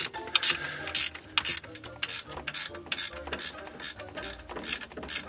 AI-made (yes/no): no